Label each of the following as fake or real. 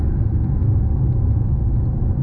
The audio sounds real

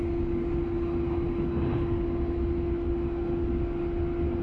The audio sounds real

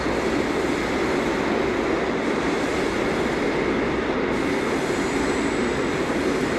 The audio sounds real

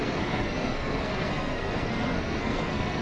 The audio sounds fake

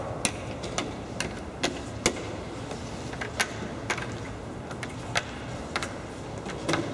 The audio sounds real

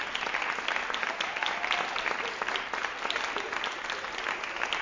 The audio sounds real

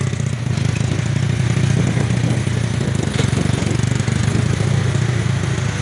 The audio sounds real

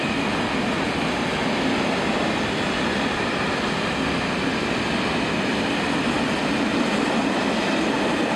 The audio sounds real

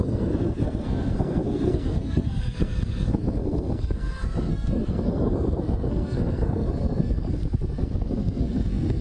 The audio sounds fake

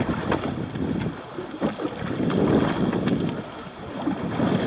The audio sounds real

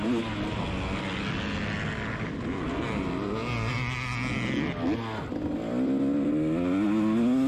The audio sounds real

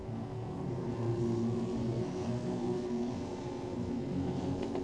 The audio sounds fake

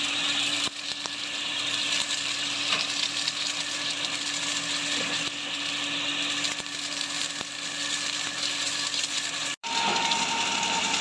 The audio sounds real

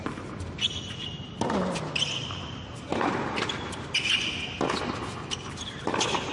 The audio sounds real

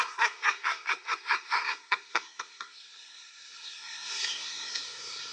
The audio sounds fake